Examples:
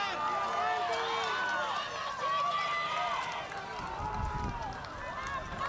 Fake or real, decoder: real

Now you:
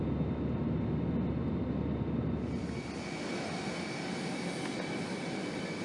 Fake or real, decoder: real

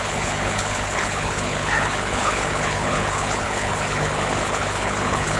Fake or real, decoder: fake, codec, HILCodec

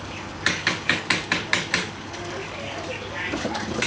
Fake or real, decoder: fake, codec, DAC